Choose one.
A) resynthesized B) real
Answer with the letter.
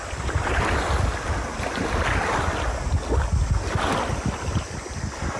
B